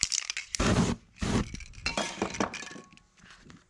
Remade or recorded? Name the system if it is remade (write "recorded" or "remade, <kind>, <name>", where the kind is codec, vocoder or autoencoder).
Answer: recorded